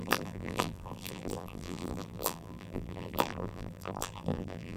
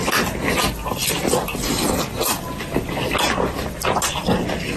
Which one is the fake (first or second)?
first